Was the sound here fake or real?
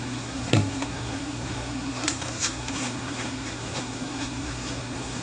fake